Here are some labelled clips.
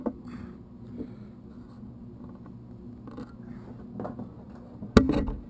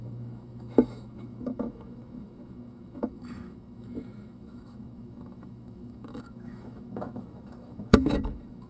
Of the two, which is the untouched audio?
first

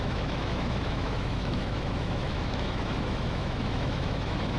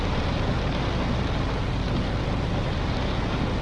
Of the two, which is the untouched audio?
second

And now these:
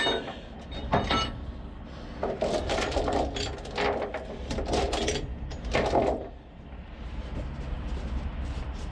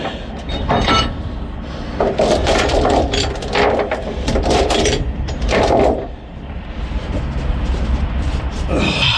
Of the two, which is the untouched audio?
first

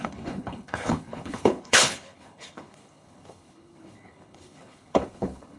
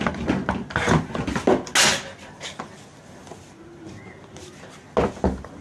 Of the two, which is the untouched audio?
second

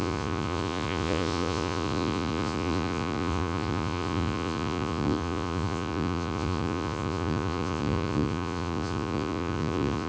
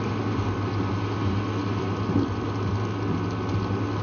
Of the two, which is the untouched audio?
second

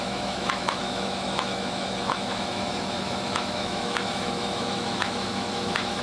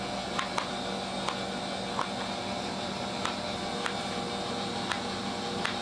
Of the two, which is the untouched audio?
second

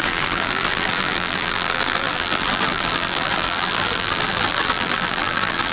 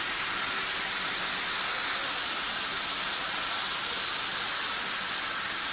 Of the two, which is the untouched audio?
second